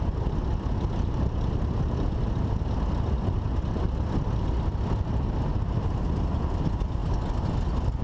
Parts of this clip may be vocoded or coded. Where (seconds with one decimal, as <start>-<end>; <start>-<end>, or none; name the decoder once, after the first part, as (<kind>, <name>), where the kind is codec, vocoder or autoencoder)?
none